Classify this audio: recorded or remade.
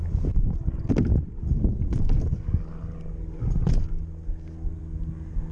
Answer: recorded